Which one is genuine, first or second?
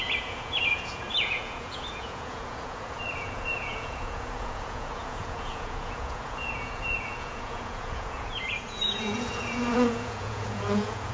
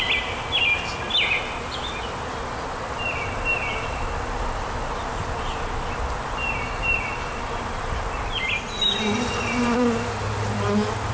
second